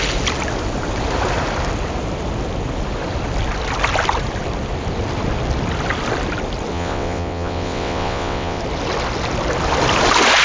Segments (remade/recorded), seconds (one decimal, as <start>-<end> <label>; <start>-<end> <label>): 0.0-6.7 recorded; 6.7-8.6 remade; 8.6-10.4 recorded